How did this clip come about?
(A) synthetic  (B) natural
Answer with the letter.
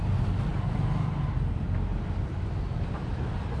B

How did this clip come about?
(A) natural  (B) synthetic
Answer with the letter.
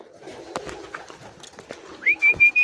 A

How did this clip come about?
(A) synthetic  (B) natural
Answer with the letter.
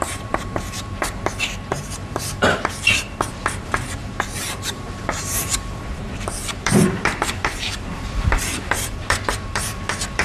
A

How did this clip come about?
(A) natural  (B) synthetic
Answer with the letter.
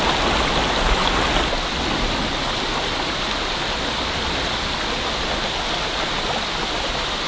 A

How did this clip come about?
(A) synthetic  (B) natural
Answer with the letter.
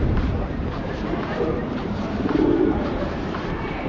A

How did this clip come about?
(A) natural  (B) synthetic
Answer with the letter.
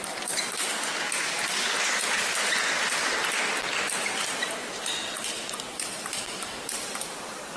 B